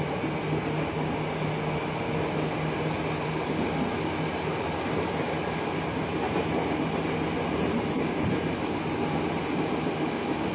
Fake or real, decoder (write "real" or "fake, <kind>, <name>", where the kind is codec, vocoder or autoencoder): real